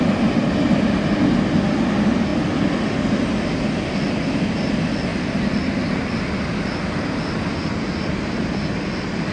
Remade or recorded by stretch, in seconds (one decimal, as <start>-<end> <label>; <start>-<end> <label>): 0.0-9.3 recorded